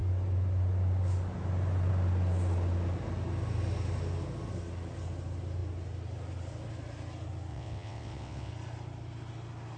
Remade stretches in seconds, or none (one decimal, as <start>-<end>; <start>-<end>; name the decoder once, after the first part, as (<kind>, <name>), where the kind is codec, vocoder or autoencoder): 7.5-8.5 (vocoder, WaveNeXt)